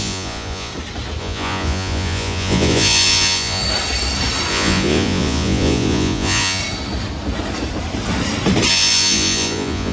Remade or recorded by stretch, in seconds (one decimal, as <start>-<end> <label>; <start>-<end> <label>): 0.0-0.7 remade; 0.7-1.2 recorded; 1.2-3.6 remade; 3.6-4.5 recorded; 4.5-6.6 remade; 6.6-8.7 recorded; 8.7-9.9 remade